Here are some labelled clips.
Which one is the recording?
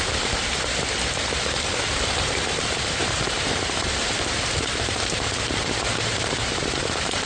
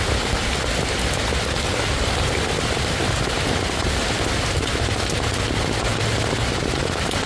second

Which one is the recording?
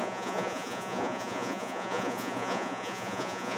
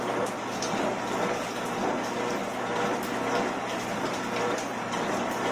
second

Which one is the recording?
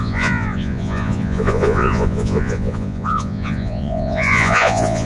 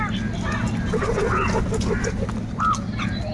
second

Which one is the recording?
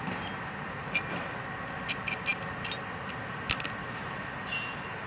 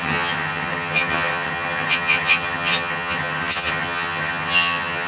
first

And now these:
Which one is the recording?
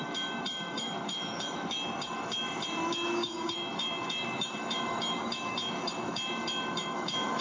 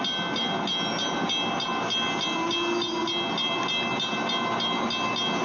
second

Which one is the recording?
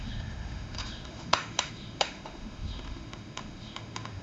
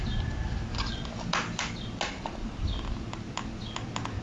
second